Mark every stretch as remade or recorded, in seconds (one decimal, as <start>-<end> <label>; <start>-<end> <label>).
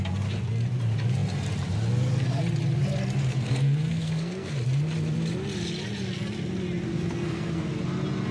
0.0-3.3 recorded; 3.3-4.5 remade; 4.5-6.9 recorded; 6.9-7.7 remade; 7.7-8.3 recorded